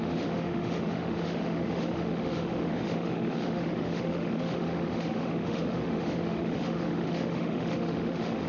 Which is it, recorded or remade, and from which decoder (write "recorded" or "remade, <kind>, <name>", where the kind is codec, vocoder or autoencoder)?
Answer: remade, autoencoder, DAC-VAE